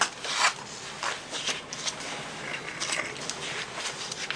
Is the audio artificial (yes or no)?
no